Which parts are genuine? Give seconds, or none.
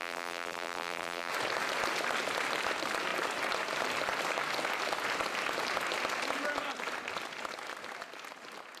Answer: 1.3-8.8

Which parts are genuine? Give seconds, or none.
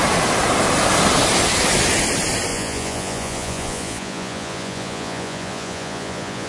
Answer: 0.0-2.5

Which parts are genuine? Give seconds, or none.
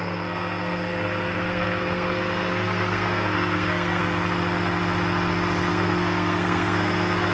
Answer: 4.0-5.7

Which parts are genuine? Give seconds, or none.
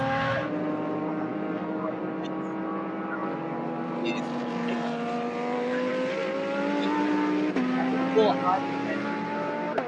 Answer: 0.0-1.3; 2.0-9.9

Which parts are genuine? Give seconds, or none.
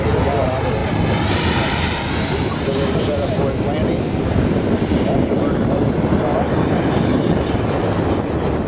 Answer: 0.0-8.7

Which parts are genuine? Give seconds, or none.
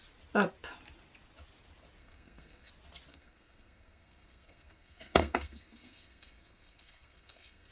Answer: 0.0-2.0; 2.7-3.1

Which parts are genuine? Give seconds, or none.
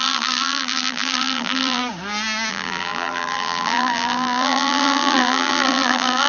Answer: 1.8-2.5